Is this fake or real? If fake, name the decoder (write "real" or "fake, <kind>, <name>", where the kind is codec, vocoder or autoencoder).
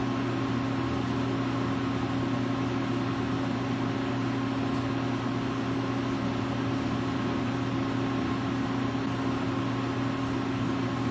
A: real